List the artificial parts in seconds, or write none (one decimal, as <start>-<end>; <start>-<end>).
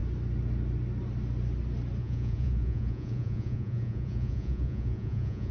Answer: 2.0-5.5